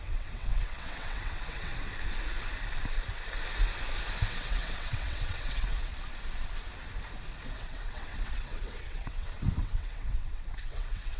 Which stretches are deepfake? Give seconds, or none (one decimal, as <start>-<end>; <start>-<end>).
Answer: 0.0-1.7; 4.3-5.9; 7.5-11.2